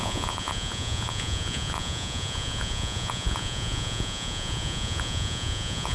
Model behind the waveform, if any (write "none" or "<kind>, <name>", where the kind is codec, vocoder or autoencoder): vocoder, Vocos